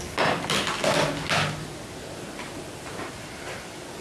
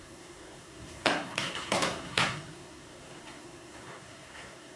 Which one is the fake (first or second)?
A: second